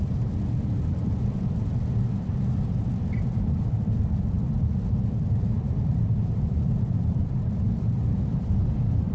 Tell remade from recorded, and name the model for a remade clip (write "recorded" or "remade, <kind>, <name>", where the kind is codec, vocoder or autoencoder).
remade, vocoder, BigVGAN v2